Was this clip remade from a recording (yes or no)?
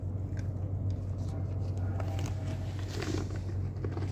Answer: no